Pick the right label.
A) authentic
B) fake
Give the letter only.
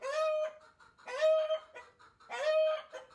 A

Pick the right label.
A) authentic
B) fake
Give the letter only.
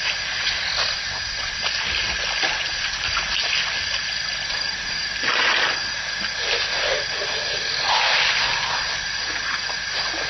A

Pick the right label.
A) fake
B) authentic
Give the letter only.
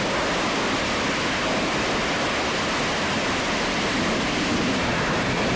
A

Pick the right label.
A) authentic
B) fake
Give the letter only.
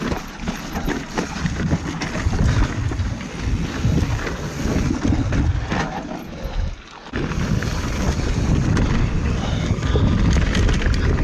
A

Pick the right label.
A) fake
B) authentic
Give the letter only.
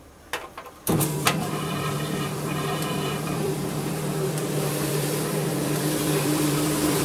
A